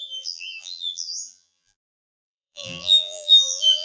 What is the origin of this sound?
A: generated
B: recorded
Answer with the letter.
A